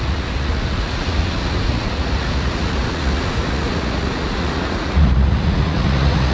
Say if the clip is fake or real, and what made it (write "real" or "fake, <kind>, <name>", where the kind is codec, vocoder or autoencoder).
fake, vocoder, Vocos